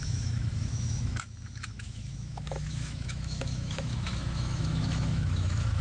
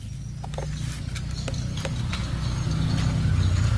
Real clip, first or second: second